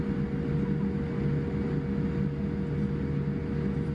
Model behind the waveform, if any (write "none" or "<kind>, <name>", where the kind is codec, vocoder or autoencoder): none